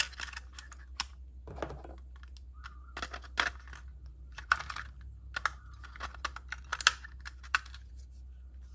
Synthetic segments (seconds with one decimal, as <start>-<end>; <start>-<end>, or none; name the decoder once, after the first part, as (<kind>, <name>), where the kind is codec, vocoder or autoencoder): 4.1-4.7 (vocoder, BigVGAN v2)